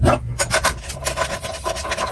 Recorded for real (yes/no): yes